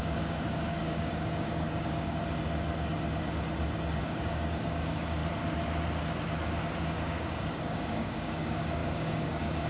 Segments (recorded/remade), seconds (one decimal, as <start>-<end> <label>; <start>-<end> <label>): 0.0-2.2 remade; 2.2-4.0 recorded; 4.0-5.2 remade; 5.2-6.8 recorded; 6.8-9.7 remade